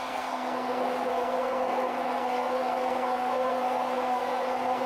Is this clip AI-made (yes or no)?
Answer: yes